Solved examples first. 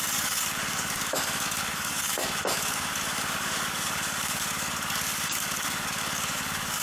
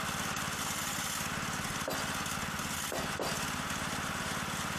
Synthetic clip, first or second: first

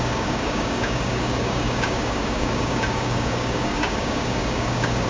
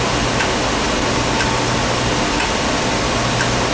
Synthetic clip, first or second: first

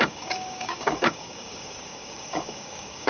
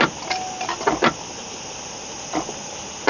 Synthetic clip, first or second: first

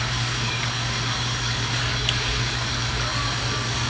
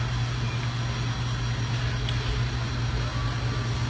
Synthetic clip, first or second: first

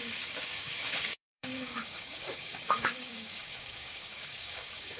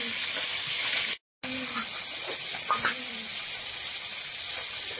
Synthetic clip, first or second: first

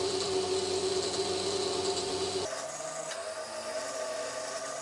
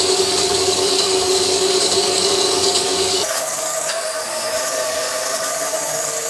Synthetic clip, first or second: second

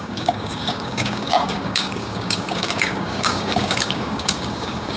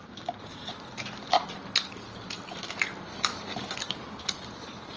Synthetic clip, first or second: first